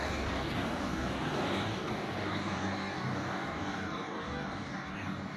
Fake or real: fake